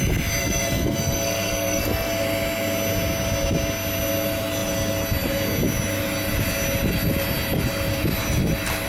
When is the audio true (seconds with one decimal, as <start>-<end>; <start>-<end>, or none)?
0.0-0.4; 2.1-8.9